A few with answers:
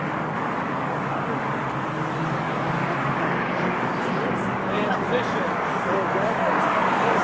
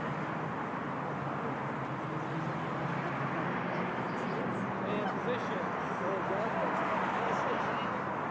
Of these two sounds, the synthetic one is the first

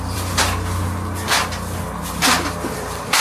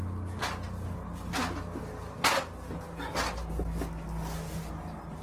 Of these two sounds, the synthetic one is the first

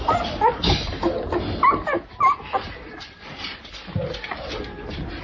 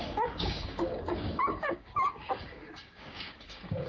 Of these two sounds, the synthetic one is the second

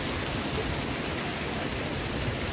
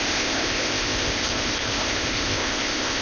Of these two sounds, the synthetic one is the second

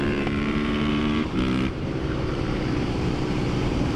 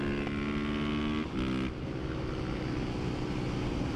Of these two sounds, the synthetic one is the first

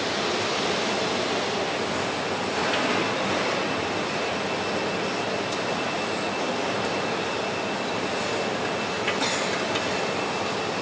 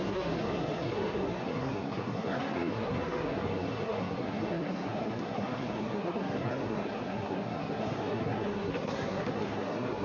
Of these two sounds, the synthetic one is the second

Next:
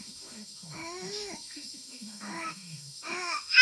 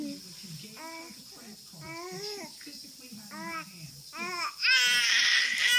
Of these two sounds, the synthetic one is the first